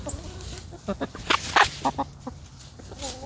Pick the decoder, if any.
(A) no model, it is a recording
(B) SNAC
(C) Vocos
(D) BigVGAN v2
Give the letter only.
A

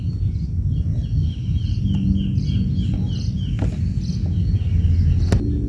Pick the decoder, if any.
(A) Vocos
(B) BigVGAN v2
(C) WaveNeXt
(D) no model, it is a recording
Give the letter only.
D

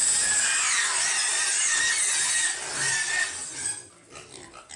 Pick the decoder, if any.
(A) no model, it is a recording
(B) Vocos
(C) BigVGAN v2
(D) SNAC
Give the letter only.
A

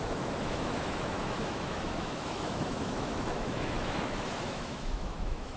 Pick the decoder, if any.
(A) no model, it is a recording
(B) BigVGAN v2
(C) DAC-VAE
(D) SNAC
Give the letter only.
C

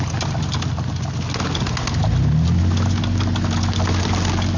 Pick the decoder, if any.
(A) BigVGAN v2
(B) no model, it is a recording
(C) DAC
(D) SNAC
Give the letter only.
B